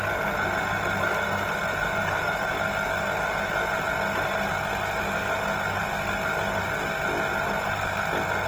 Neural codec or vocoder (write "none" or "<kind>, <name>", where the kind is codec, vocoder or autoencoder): none